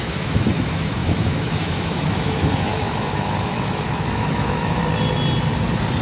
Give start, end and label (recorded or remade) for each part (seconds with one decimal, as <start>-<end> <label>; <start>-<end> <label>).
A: 0.0-4.8 remade; 4.8-6.0 recorded